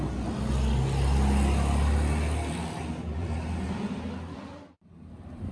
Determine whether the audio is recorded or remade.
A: recorded